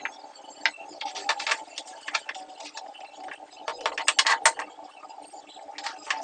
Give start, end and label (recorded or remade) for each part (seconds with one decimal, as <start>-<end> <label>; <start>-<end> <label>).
0.0-6.2 recorded